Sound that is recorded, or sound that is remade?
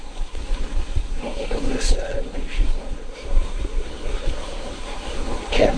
remade